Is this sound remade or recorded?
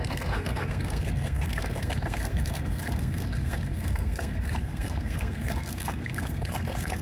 remade